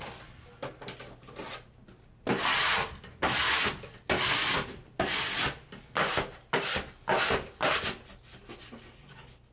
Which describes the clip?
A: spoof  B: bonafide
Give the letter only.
B